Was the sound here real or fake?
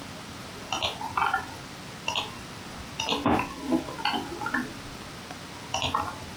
real